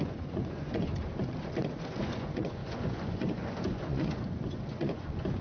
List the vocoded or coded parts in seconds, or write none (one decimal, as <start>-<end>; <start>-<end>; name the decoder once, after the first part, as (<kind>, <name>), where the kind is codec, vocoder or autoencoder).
0.0-0.9 (vocoder, Vocos); 1.7-5.4

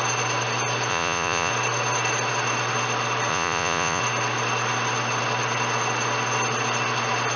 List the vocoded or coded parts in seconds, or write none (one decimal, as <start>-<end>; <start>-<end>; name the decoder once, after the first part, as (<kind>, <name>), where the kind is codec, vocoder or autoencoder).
0.9-1.5 (vocoder, Vocos); 3.3-4.0

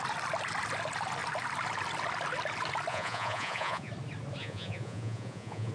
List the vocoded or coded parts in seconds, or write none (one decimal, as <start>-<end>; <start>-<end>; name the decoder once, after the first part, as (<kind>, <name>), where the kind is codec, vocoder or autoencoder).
2.9-3.9 (vocoder, Vocos); 4.4-5.7

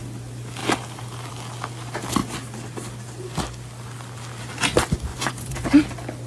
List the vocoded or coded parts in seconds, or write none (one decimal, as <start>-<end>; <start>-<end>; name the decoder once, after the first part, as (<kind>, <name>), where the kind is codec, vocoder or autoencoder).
5.1-5.8 (vocoder, Vocos)

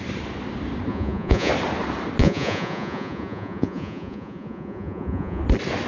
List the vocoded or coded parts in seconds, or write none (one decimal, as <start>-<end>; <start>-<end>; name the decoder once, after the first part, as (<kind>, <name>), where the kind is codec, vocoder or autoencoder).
0.9-1.5 (vocoder, Vocos); 2.2-5.4

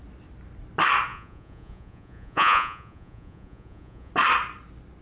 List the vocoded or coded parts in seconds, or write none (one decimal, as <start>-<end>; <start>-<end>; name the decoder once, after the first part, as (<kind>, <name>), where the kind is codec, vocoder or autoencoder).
1.1-4.1 (vocoder, Vocos)